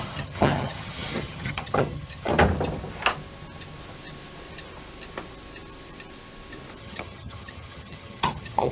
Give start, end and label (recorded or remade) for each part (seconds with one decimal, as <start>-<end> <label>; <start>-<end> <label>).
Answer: 0.0-2.3 remade; 2.3-6.8 recorded; 6.8-8.7 remade